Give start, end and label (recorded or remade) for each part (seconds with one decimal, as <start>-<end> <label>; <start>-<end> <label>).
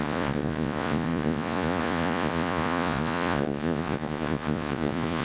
0.0-5.2 remade